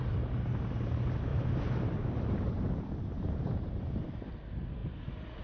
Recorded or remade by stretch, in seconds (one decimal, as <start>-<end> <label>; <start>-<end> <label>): 0.0-1.3 recorded; 1.3-4.2 remade; 4.2-5.4 recorded